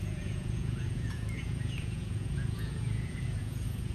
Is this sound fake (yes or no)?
yes